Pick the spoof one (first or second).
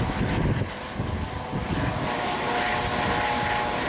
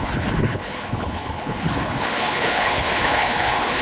second